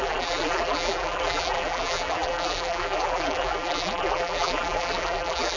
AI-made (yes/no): yes